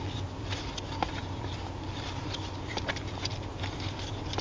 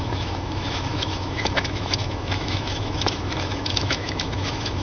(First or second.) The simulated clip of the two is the second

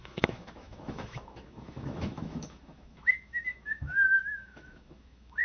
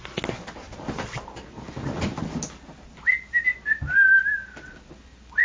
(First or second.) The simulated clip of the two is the first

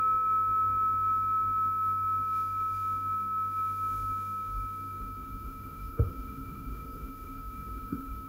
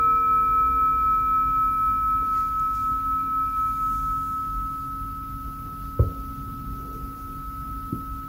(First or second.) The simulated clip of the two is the first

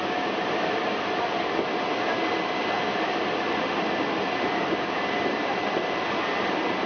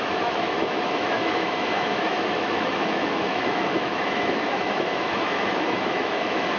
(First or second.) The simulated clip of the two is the second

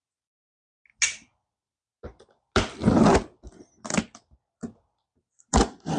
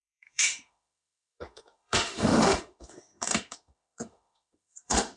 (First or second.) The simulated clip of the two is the second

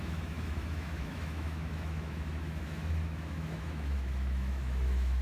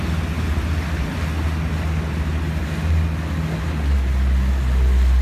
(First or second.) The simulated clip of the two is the first